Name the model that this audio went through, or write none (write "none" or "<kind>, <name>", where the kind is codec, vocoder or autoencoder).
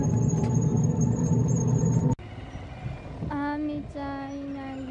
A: none